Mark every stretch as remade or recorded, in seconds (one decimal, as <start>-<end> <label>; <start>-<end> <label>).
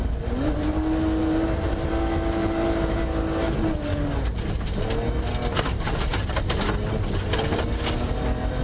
0.0-1.2 recorded; 1.2-1.9 remade; 1.9-2.4 recorded; 2.4-3.0 remade; 3.0-8.6 recorded